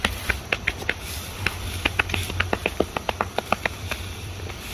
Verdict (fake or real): fake